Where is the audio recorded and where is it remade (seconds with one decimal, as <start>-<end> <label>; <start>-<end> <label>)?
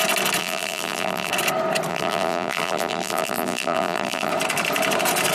0.0-0.4 recorded; 0.4-1.3 remade; 1.3-1.9 recorded; 1.9-4.3 remade; 4.3-5.3 recorded